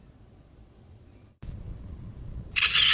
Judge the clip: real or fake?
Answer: fake